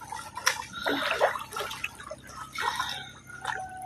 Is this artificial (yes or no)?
no